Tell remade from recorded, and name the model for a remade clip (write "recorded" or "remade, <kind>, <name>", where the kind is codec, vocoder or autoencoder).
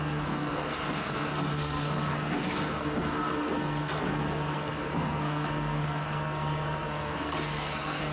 remade, codec, SNAC